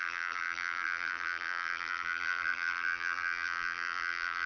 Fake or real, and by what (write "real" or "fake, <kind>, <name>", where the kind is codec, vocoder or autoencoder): fake, vocoder, BigVGAN v2